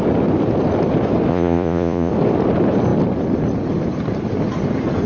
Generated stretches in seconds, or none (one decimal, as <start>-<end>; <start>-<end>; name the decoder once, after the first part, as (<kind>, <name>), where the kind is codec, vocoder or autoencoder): 1.3-2.1 (vocoder, Vocos)